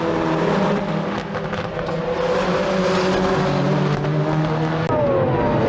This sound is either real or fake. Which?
real